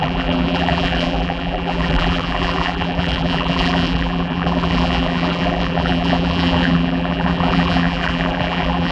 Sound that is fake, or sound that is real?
fake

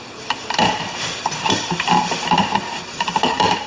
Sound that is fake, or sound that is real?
fake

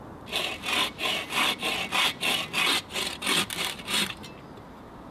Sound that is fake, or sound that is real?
real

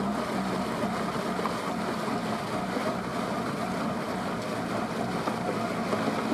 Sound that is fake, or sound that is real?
real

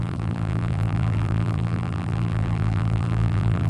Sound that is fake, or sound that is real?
fake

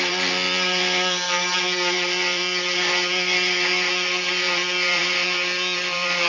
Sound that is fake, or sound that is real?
fake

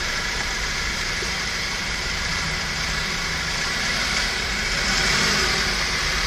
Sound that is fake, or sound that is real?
fake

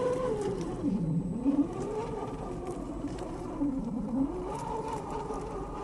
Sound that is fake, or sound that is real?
fake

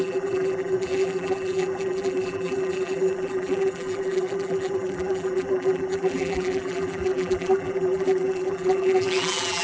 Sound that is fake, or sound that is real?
fake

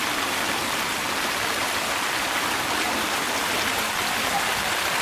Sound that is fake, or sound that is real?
real